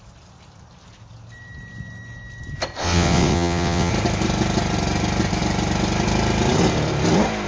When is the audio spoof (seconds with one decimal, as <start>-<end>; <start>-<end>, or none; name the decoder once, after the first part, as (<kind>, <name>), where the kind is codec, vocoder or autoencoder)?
2.8-3.9 (vocoder, WaveNeXt)